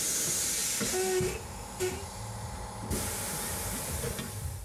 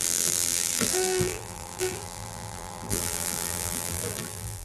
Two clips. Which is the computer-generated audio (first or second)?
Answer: second